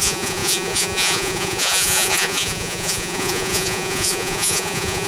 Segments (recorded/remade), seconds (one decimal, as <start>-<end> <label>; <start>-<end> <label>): 0.0-5.1 remade